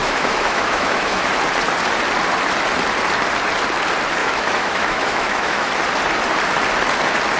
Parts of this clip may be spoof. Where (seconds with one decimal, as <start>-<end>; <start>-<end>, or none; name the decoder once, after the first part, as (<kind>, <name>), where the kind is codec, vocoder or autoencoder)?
0.0-1.3 (autoencoder, DAC-VAE); 4.2-5.7